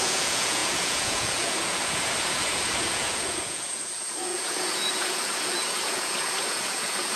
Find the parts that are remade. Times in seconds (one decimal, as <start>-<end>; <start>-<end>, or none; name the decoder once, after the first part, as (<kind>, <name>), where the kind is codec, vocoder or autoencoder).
0.0-7.2 (vocoder, Vocos)